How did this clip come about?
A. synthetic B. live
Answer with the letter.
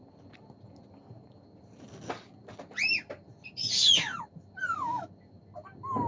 B